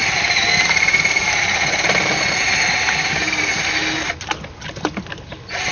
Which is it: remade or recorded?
recorded